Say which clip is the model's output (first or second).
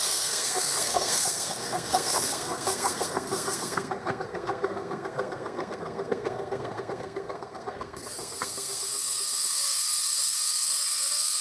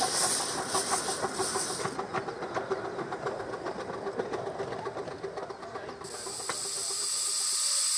first